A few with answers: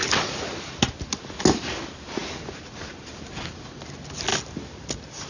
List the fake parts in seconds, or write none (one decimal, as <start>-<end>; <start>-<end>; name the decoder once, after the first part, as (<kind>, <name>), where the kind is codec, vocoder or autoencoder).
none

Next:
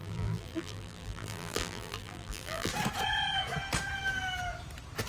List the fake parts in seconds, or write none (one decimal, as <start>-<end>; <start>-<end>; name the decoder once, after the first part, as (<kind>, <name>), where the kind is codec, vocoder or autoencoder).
0.0-2.7 (vocoder, BigVGAN v2)

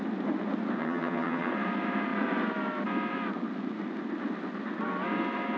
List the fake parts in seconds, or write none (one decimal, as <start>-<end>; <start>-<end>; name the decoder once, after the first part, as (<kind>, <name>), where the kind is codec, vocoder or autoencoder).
0.8-1.5 (vocoder, HiFi-GAN)

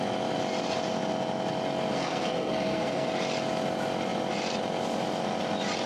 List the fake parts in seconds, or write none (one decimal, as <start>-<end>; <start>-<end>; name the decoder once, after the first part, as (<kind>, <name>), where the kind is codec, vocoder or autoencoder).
1.9-3.1 (codec, SNAC)